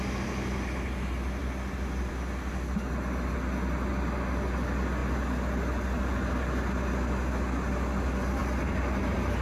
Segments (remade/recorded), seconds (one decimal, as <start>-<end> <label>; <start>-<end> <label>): 0.0-9.4 recorded